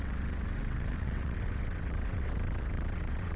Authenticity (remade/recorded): remade